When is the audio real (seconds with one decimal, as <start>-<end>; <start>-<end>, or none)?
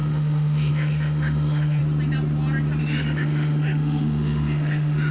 1.8-2.8